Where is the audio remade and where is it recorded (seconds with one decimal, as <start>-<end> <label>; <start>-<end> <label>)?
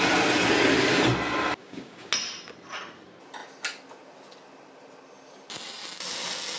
0.0-1.6 recorded; 1.6-2.1 remade; 2.1-6.6 recorded